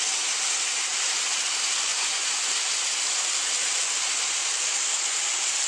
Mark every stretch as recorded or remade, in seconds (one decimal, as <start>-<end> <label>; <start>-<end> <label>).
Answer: 0.0-1.9 recorded; 1.9-2.4 remade; 2.4-5.7 recorded